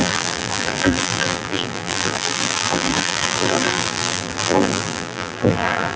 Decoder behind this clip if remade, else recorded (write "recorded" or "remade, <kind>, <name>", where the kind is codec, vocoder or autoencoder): remade, vocoder, BigVGAN v2